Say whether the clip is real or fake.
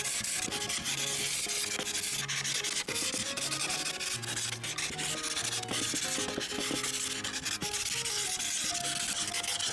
real